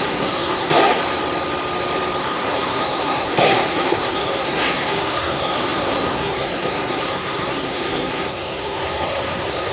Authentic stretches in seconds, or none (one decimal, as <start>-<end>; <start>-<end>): 1.0-2.2